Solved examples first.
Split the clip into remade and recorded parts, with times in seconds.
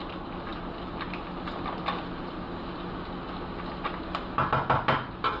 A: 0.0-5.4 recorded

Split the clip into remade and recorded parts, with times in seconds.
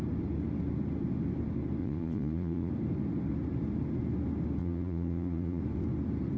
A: 0.0-1.8 recorded; 1.8-2.7 remade; 2.7-4.6 recorded; 4.6-5.6 remade; 5.6-6.4 recorded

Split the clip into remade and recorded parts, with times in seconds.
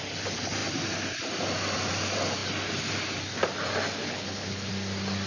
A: 0.0-4.0 recorded; 4.0-4.7 remade; 4.7-5.3 recorded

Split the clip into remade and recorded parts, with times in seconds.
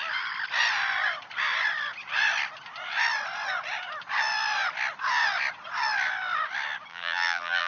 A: 0.0-6.9 recorded; 6.9-7.7 remade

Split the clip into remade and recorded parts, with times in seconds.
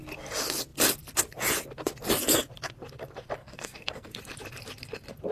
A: 0.0-3.4 recorded; 3.4-4.2 remade; 4.2-5.3 recorded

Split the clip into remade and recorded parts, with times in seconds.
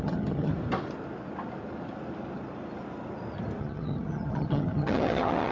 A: 0.0-0.5 remade; 0.5-3.6 recorded; 3.6-5.5 remade